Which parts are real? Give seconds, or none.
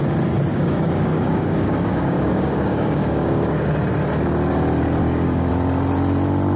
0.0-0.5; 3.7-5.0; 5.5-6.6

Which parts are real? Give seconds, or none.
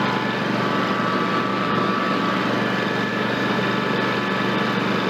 0.0-1.5; 2.2-3.1; 3.6-5.1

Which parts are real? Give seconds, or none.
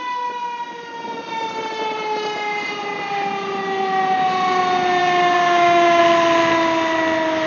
0.0-5.0; 6.0-7.5